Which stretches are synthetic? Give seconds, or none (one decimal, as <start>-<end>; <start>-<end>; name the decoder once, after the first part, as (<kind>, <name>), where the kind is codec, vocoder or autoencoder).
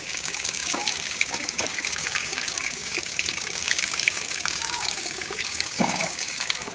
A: 0.0-6.7 (codec, DAC)